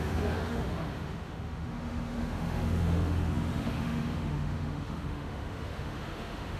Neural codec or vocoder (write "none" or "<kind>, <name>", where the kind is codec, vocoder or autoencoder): autoencoder, DAC-VAE